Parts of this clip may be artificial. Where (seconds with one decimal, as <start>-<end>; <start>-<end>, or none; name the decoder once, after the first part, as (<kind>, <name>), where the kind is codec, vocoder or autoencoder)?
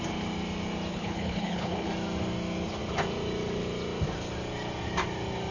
0.9-1.9 (codec, HILCodec)